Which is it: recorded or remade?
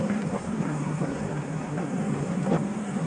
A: remade